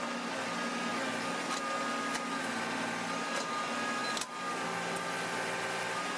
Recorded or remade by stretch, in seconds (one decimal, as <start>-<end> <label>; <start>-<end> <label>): 0.0-6.2 recorded